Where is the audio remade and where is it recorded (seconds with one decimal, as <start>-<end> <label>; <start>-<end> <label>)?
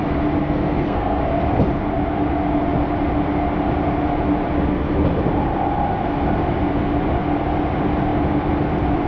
0.0-0.4 recorded; 0.4-1.2 remade; 1.2-9.1 recorded